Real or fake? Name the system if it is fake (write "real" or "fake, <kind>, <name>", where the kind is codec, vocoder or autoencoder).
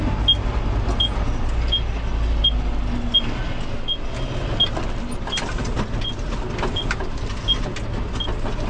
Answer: real